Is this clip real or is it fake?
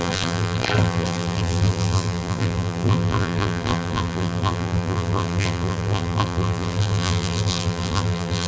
fake